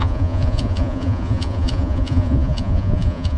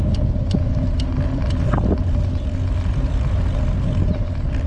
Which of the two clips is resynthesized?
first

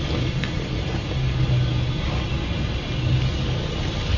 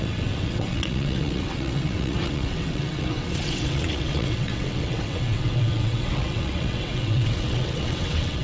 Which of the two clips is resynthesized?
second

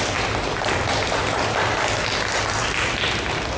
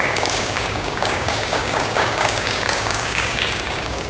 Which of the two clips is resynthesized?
second